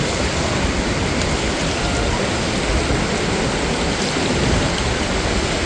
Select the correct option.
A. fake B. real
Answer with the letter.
B